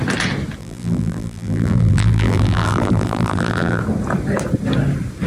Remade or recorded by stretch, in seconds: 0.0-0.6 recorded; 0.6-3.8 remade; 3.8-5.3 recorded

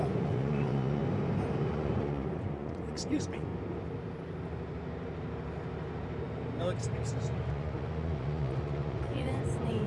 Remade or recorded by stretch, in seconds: 0.0-1.0 remade; 1.0-1.6 recorded; 1.6-3.5 remade; 3.5-7.5 recorded; 7.5-9.9 remade

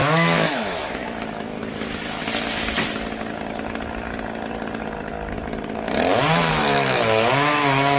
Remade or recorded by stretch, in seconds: 0.0-2.2 remade; 2.2-6.5 recorded; 6.5-8.0 remade

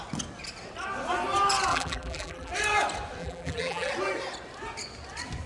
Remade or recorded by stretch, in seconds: 0.0-1.7 recorded; 1.7-2.5 remade; 2.5-3.2 recorded; 3.2-3.9 remade; 3.9-5.5 recorded

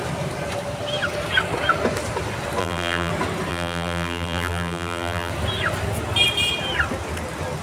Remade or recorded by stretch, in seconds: 0.0-2.6 recorded; 2.6-3.1 remade; 3.1-3.5 recorded; 3.5-5.3 remade; 5.3-7.6 recorded

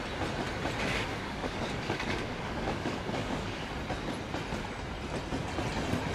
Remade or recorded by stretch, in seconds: 0.0-0.9 recorded; 0.9-3.7 remade; 3.7-6.1 recorded

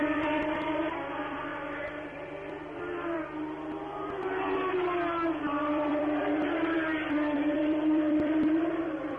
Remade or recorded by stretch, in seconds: 0.0-1.5 remade; 1.5-2.1 recorded; 2.1-3.2 remade; 3.2-5.7 recorded; 5.7-9.2 remade

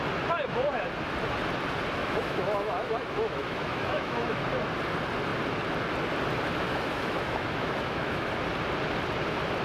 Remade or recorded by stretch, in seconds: 0.0-2.0 recorded; 2.0-4.4 remade; 4.4-6.7 recorded; 6.7-8.3 remade; 8.3-9.6 recorded